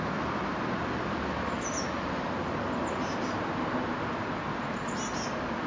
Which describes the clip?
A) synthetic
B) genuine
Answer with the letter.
B